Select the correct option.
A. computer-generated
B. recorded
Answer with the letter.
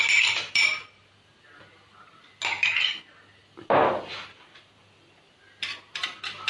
B